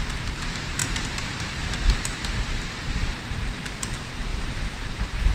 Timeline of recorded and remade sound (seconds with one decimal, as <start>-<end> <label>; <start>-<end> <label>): 0.0-0.8 recorded; 0.8-3.8 remade; 3.8-4.3 recorded; 4.3-5.3 remade